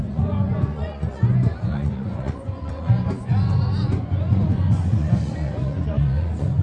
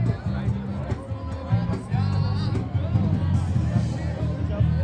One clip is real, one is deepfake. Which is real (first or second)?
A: second